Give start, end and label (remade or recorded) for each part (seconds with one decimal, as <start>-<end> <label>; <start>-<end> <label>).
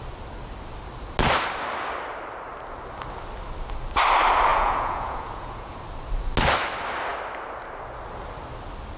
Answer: 0.0-4.5 recorded; 4.5-5.8 remade; 5.8-9.0 recorded